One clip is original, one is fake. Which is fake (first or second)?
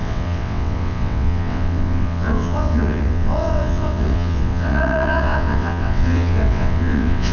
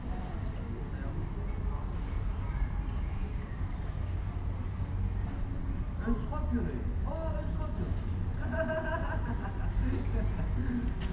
first